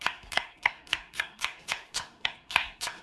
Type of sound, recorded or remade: remade